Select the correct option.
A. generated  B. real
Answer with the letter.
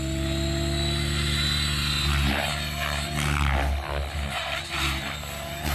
B